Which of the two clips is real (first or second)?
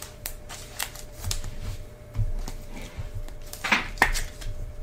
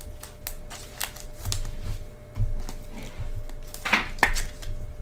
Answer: second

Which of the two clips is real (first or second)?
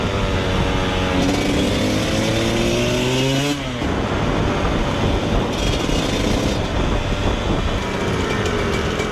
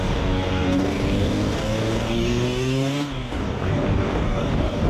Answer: first